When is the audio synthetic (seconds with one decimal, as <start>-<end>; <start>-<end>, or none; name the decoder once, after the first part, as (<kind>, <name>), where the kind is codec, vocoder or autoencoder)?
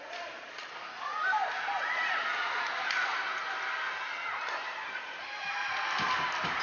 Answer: 0.0-3.1 (vocoder, BigVGAN v2); 4.5-6.6